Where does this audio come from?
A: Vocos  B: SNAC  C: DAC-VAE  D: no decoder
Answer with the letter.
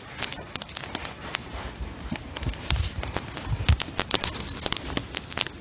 D